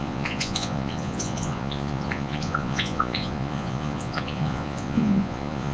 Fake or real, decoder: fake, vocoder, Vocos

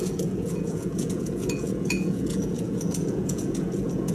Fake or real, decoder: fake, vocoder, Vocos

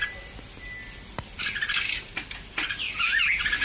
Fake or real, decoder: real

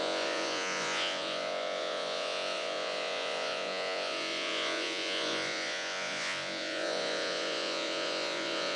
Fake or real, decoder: fake, vocoder, Vocos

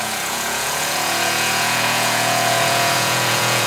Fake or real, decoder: fake, vocoder, Vocos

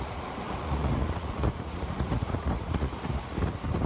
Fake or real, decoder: fake, vocoder, Vocos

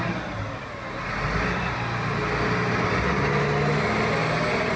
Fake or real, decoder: real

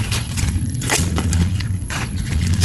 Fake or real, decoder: fake, vocoder, Vocos